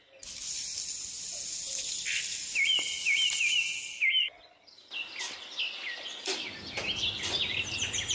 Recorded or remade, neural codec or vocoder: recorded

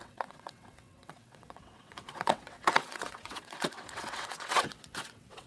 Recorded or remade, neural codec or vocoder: remade, vocoder, WaveNeXt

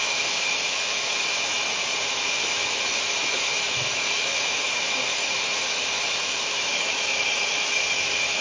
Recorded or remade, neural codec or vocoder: remade, autoencoder, DAC-VAE